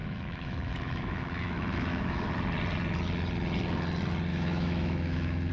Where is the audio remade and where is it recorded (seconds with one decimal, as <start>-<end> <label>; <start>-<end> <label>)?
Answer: 0.0-2.3 remade; 2.3-4.3 recorded; 4.3-5.5 remade